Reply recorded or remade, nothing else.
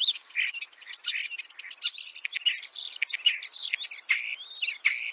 recorded